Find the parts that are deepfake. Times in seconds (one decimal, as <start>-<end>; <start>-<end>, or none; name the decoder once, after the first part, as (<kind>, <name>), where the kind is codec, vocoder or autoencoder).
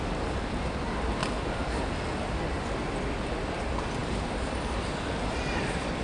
none